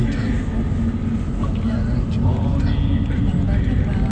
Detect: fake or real real